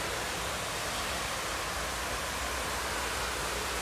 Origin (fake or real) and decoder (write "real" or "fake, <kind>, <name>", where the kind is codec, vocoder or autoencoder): real